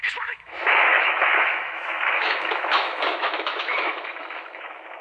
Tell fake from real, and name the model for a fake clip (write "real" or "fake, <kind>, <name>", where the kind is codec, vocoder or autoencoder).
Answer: fake, autoencoder, DAC-VAE